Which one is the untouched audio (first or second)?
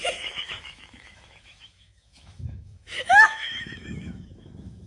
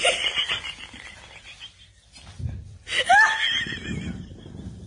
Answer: second